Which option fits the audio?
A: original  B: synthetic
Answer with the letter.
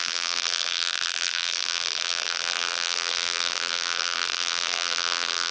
B